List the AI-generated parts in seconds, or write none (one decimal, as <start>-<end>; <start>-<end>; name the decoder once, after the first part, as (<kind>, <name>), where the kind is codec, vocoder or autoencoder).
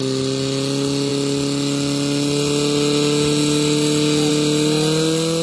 none